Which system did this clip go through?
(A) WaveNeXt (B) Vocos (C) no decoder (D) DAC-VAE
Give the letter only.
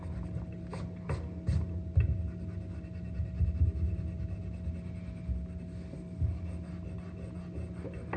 C